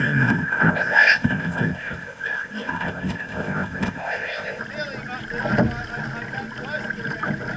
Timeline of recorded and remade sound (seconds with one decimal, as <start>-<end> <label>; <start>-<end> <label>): 0.0-4.6 remade; 4.6-7.6 recorded